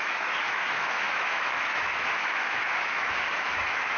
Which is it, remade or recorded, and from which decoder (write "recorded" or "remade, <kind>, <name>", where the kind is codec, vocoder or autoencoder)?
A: remade, autoencoder, DAC-VAE